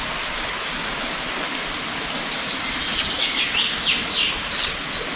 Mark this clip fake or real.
real